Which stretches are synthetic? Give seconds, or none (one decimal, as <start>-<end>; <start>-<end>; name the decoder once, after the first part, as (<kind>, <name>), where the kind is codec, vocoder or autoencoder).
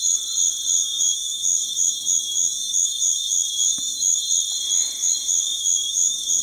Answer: 0.8-4.2 (autoencoder, DAC-VAE); 5.0-6.4